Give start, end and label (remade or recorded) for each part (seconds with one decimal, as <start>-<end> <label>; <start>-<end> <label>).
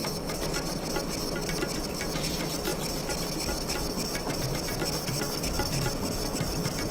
0.0-6.9 recorded